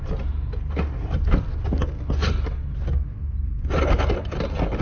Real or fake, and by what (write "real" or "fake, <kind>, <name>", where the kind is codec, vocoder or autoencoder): real